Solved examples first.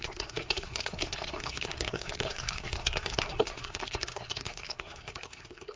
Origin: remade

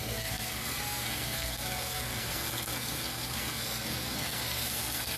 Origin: remade